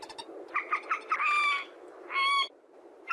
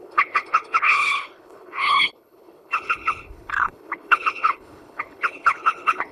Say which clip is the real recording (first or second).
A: first